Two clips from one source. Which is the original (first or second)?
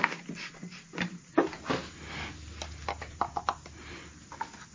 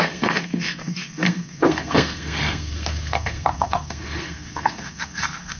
first